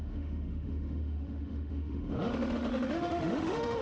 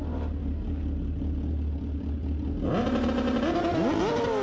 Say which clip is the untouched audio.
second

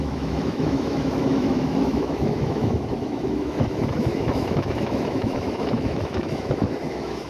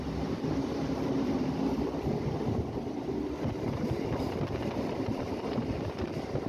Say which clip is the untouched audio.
second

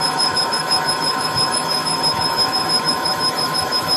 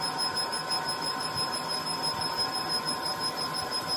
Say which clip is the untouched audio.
second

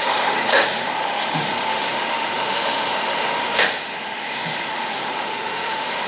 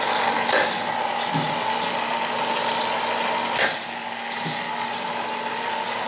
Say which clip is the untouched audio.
second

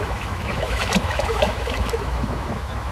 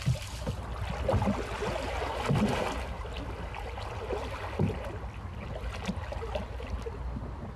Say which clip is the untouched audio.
second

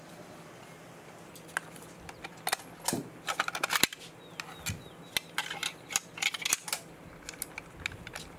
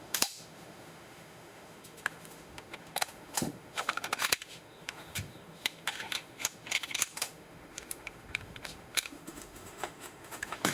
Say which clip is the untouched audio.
first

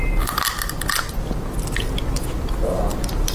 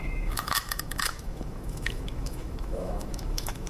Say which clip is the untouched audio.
first